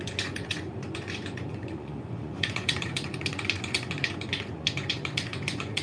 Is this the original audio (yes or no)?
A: no